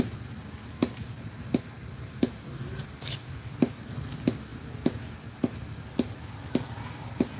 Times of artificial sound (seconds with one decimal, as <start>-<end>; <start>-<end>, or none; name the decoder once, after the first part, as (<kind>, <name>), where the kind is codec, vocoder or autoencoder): none